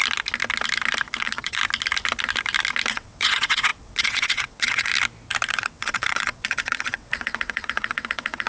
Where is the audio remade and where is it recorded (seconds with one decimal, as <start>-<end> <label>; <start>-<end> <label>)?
0.0-1.2 recorded; 1.2-1.6 remade; 1.6-2.9 recorded; 2.9-4.9 remade; 4.9-5.5 recorded; 5.5-8.5 remade